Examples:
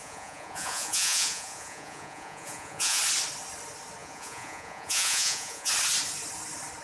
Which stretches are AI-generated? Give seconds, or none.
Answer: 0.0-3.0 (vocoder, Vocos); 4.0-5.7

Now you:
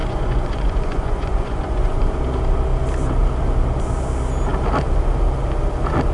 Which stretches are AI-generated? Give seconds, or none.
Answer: 0.0-2.0 (vocoder, Vocos)

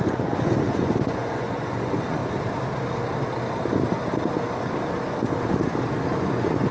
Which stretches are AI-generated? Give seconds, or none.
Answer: 0.0-2.2 (vocoder, Vocos); 6.2-6.7

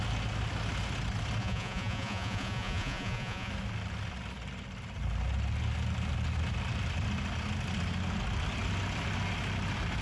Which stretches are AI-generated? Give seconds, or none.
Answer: 1.4-3.5 (vocoder, Vocos)

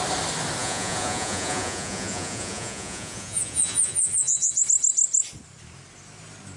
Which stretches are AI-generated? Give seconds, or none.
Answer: 0.6-4.6 (vocoder, Vocos)

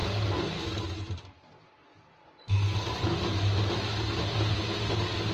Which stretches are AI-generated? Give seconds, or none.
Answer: none